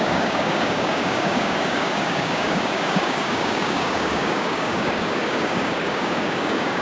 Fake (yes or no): yes